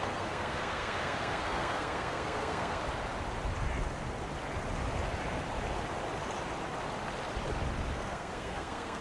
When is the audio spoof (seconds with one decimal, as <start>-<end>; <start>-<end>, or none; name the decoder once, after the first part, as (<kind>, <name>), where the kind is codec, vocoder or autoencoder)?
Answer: 0.0-2.8 (codec, SNAC); 7.9-9.0